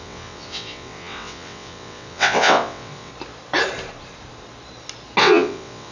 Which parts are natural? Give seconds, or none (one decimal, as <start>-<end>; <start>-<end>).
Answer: 3.1-5.2